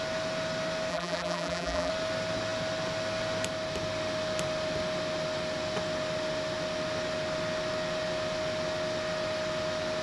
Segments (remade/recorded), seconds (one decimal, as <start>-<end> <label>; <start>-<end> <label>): 0.0-0.9 recorded; 0.9-1.9 remade; 1.9-10.0 recorded